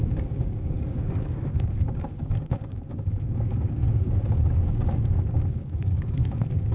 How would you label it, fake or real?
fake